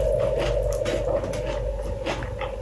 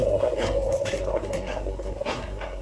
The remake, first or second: second